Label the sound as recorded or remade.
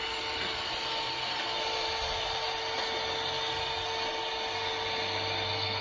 recorded